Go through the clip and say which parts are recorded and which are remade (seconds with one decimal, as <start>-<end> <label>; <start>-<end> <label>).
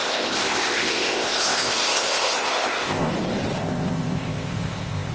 0.0-3.1 remade; 3.1-3.6 recorded; 3.6-5.1 remade